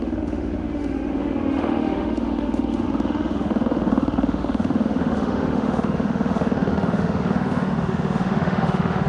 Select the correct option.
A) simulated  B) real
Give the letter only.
A